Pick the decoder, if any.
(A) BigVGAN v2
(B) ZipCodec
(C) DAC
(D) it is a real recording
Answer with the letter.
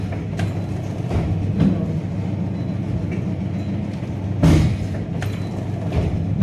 D